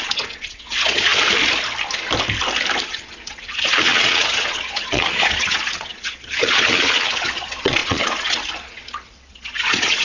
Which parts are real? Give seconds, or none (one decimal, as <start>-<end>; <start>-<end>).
1.1-2.8